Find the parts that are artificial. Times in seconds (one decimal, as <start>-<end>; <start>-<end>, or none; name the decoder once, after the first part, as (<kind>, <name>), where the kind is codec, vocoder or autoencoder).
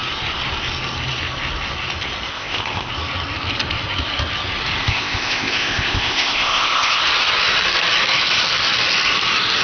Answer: 2.3-2.9 (codec, ZipCodec); 4.8-7.0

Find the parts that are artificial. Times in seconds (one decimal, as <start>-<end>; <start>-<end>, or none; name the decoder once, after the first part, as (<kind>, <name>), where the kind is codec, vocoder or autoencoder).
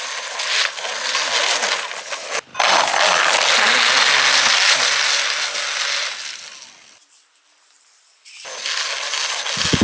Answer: none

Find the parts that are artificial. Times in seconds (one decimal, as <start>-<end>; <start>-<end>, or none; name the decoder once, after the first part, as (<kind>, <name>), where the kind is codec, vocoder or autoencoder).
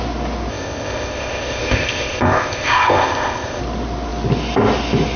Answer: 0.5-3.6 (codec, ZipCodec)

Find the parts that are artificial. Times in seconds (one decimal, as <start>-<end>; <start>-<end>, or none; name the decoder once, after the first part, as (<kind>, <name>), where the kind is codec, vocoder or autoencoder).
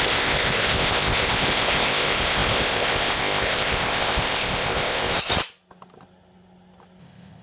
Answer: 0.0-5.3 (codec, ZipCodec); 7.0-7.4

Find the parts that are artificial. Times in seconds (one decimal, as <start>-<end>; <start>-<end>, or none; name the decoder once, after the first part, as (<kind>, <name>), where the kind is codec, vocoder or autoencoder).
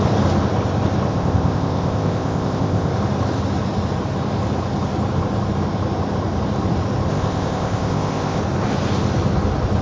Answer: 1.1-2.9 (codec, ZipCodec); 7.1-8.4